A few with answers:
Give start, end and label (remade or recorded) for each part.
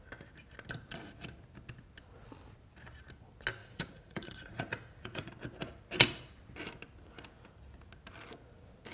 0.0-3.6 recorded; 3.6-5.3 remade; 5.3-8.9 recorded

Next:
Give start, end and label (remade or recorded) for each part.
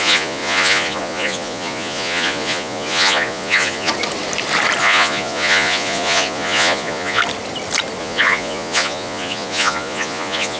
0.0-3.9 remade; 3.9-4.8 recorded; 4.8-7.2 remade; 7.2-8.0 recorded; 8.0-10.6 remade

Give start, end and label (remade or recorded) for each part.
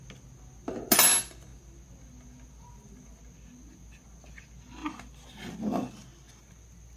0.0-7.0 recorded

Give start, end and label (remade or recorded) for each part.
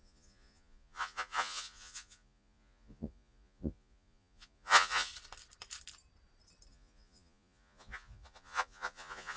0.0-5.1 remade; 5.1-6.7 recorded; 6.7-9.4 remade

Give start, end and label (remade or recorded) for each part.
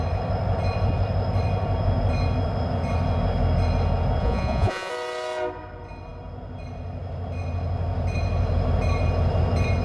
0.0-4.2 recorded; 4.2-4.9 remade; 4.9-9.8 recorded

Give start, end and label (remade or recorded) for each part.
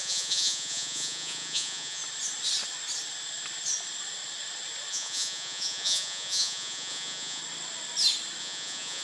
0.0-2.0 remade; 2.0-4.9 recorded; 4.9-7.4 remade; 7.4-8.4 recorded; 8.4-9.0 remade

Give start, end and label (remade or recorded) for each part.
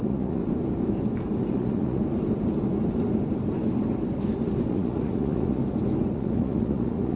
0.0-0.4 remade; 0.4-1.5 recorded; 1.5-2.0 remade; 2.0-4.7 recorded; 4.7-5.6 remade; 5.6-6.1 recorded; 6.1-7.2 remade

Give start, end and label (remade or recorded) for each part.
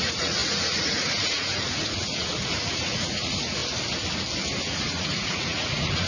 0.0-3.6 remade; 3.6-4.6 recorded; 4.6-6.1 remade